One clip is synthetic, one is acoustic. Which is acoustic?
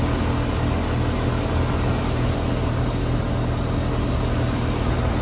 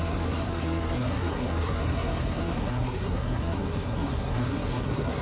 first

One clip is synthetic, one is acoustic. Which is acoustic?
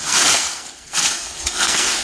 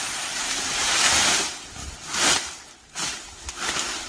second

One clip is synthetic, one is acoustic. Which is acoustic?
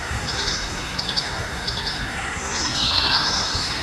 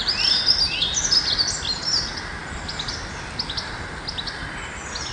second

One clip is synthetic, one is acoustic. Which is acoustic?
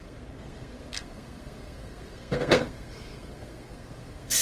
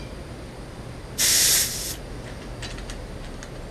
second